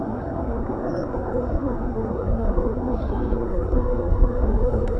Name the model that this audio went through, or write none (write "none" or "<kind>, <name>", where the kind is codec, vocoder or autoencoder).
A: codec, SNAC